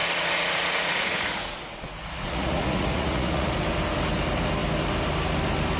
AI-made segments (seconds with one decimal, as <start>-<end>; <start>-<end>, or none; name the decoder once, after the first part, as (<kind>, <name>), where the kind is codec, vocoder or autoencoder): 0.0-3.5 (vocoder, Vocos)